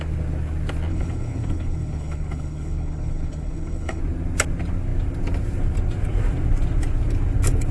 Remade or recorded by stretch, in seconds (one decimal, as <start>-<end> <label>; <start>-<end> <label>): 0.0-0.9 recorded; 0.9-4.0 remade; 4.0-7.7 recorded